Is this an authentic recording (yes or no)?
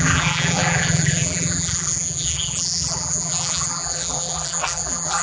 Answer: no